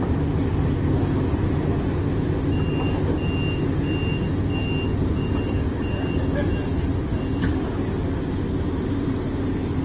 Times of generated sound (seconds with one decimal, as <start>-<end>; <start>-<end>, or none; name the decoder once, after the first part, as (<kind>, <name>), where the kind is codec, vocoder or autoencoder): 5.3-7.2 (vocoder, BigVGAN v2)